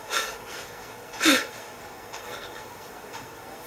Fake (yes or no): yes